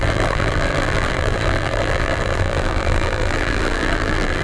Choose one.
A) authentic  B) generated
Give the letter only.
B